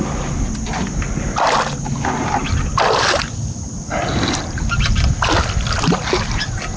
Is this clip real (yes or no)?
yes